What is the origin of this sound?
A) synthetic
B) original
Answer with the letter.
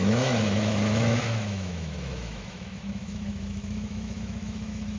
A